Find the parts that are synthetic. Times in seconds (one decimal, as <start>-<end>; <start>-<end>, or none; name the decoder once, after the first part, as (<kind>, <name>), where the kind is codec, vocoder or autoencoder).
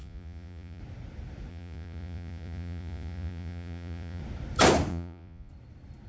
0.0-0.8 (vocoder, Vocos); 1.5-4.2; 4.9-5.5